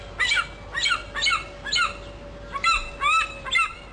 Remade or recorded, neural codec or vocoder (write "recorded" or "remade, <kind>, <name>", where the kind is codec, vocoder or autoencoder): recorded